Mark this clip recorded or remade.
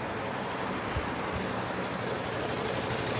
recorded